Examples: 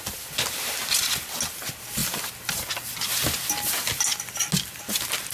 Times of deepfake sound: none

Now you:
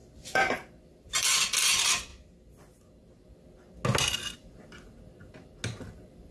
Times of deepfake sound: 0.0-2.1; 5.8-6.3

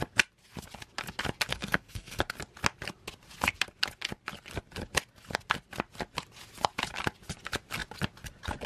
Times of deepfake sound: 1.5-2.2

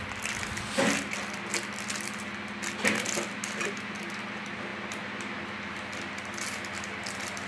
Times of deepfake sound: none

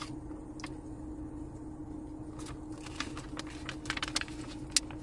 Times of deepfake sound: none

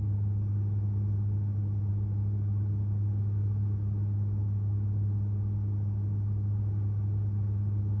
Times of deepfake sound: none

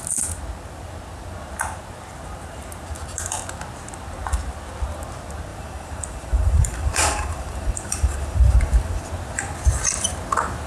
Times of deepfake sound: 5.5-9.1

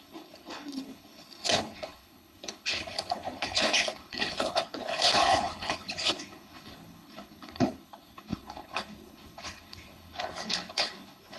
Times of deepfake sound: 0.0-11.4